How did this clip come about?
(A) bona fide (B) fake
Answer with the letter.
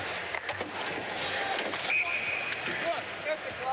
A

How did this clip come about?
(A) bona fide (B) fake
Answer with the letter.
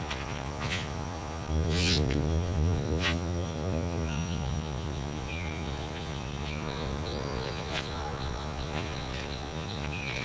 B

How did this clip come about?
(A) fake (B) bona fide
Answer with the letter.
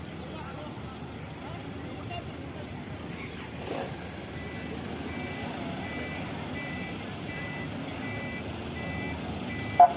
B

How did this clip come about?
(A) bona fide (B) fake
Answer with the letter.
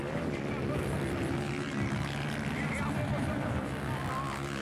A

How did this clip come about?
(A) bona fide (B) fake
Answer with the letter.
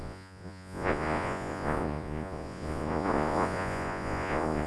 B